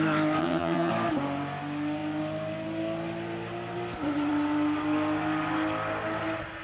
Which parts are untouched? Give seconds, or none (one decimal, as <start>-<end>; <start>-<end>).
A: 0.0-0.4; 0.9-6.6